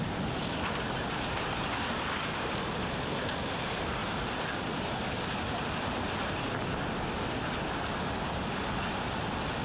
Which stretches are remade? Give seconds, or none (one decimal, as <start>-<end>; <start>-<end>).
none